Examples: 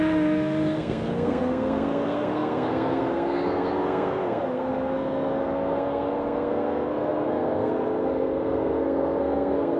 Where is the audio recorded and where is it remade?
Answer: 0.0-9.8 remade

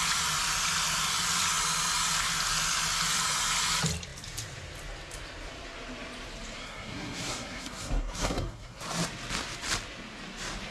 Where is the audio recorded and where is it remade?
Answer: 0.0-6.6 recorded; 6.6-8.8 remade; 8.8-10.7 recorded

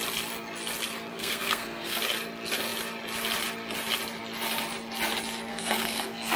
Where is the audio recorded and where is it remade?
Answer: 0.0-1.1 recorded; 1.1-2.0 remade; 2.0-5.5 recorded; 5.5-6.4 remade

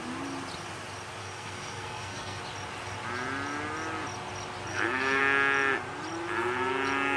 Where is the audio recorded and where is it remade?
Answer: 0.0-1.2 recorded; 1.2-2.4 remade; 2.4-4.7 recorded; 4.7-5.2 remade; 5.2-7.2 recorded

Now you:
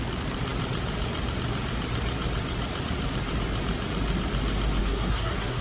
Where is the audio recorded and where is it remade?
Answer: 0.0-4.8 recorded; 4.8-5.6 remade

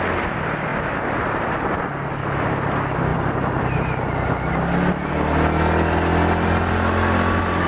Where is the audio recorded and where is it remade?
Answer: 0.0-7.7 recorded

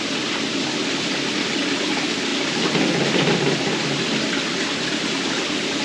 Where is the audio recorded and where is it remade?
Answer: 0.0-5.8 recorded